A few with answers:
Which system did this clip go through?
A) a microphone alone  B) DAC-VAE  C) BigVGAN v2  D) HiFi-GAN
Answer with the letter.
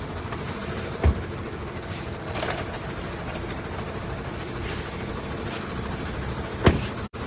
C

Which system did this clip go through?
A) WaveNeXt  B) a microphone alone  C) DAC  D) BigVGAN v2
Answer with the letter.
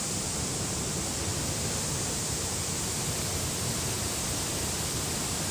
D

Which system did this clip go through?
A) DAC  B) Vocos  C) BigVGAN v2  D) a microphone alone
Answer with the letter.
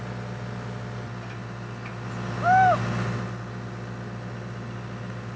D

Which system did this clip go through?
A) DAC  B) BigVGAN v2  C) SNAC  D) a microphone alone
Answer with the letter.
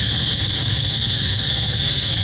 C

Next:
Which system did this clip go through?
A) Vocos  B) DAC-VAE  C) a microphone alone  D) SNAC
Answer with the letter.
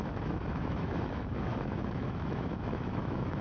B